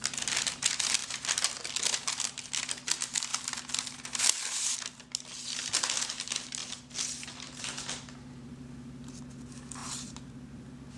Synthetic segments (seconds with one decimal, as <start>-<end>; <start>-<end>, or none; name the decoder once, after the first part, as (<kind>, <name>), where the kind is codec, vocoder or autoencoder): 6.6-9.2 (vocoder, BigVGAN v2); 9.8-10.5